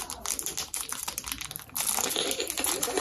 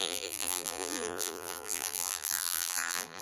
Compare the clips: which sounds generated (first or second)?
second